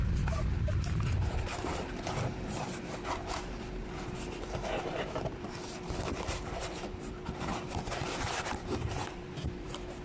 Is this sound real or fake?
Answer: fake